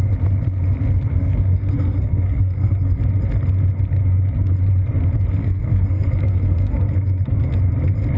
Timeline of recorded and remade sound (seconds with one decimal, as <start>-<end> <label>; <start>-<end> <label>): 0.0-1.1 recorded; 1.1-3.0 remade; 3.0-5.4 recorded; 5.4-7.5 remade; 7.5-8.2 recorded